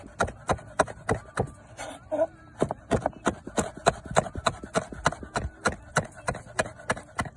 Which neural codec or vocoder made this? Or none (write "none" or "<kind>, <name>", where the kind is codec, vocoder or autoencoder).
none